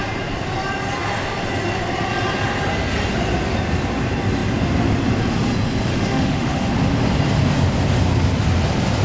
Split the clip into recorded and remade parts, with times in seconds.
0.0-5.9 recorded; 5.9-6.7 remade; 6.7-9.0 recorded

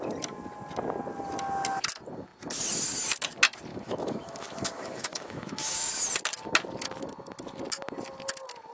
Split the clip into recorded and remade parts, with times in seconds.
0.0-3.7 recorded; 3.7-5.9 remade; 5.9-8.7 recorded

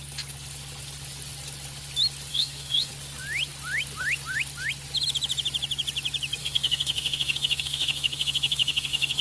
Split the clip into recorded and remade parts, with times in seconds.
0.0-2.3 recorded; 2.3-2.9 remade; 2.9-6.4 recorded; 6.4-9.2 remade

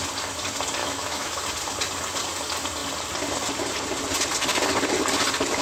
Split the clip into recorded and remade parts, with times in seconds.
0.0-0.8 recorded; 0.8-1.4 remade; 1.4-5.6 recorded

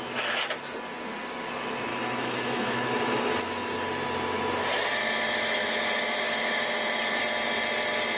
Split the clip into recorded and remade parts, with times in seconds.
0.0-1.9 recorded; 1.9-3.3 remade; 3.3-5.0 recorded; 5.0-7.2 remade; 7.2-8.2 recorded

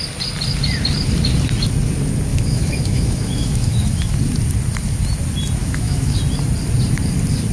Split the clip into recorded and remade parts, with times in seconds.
0.0-2.3 recorded; 2.3-4.2 remade; 4.2-5.6 recorded; 5.6-6.2 remade; 6.2-7.5 recorded